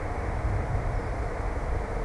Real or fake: fake